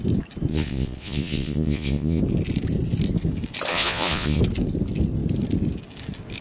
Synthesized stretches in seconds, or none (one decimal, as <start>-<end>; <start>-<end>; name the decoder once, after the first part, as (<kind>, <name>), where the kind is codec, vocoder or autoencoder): 0.5-2.2 (vocoder, Vocos); 3.7-4.4